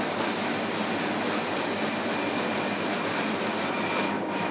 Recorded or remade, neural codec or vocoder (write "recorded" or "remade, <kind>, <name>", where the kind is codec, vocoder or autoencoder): recorded